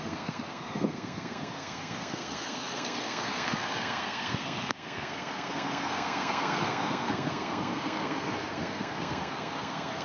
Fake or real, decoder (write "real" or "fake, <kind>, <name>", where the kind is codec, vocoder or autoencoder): fake, codec, SNAC